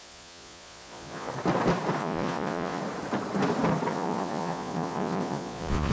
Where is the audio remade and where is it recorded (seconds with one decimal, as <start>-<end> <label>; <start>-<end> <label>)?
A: 0.0-1.3 remade; 1.3-2.0 recorded; 2.0-2.8 remade; 2.8-3.9 recorded; 3.9-5.9 remade